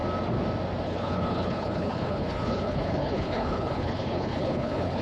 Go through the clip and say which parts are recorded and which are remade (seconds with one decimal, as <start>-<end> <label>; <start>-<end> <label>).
0.0-0.8 recorded; 0.8-5.0 remade